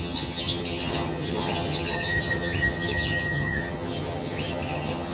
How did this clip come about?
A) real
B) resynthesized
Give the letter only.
B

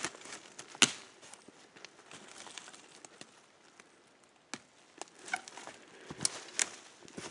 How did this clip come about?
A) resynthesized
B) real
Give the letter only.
B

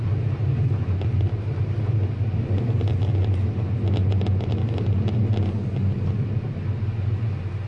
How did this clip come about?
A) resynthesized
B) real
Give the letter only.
B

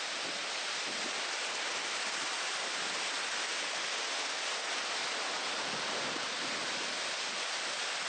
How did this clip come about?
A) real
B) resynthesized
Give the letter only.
A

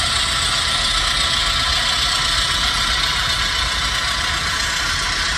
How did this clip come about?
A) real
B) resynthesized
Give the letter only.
A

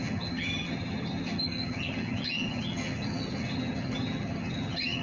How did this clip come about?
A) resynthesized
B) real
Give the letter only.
A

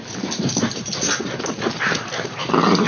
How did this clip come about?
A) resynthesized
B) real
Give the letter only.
B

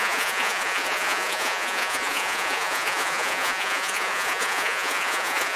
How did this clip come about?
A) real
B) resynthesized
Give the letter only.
B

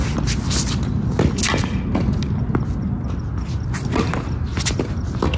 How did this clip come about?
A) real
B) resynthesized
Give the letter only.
A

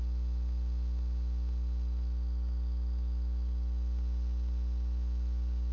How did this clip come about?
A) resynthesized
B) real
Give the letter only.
B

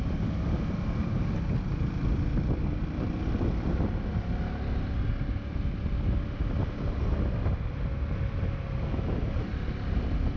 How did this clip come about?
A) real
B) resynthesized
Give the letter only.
A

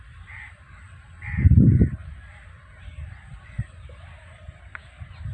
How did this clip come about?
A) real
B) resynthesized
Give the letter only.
B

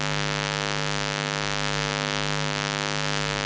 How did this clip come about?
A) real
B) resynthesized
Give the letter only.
B